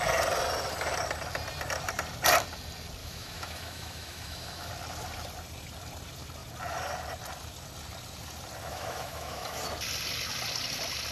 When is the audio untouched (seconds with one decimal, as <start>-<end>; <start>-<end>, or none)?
0.0-3.0; 4.7-8.7; 9.7-11.1